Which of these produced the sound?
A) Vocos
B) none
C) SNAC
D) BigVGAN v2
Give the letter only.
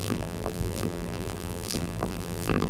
D